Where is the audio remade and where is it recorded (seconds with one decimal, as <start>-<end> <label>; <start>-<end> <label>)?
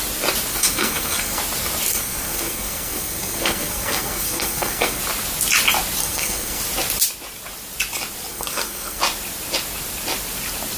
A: 0.0-0.5 recorded; 0.5-1.4 remade; 1.4-1.9 recorded; 1.9-5.0 remade; 5.0-6.0 recorded; 6.0-6.6 remade; 6.6-8.3 recorded; 8.3-9.0 remade; 9.0-10.8 recorded